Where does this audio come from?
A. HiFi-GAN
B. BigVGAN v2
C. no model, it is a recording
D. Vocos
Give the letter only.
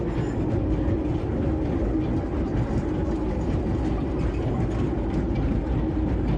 C